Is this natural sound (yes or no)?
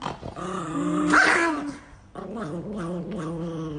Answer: yes